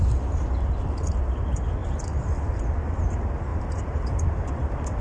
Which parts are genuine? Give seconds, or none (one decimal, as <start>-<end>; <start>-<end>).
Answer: 0.0-3.5; 4.5-5.0